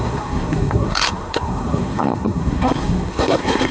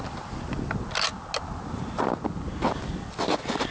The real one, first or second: second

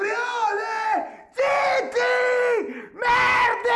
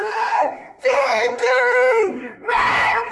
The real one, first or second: first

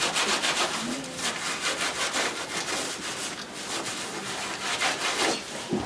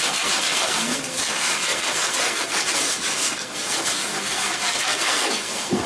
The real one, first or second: first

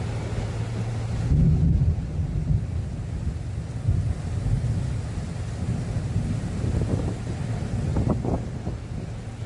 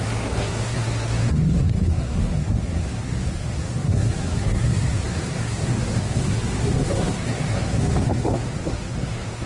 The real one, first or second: first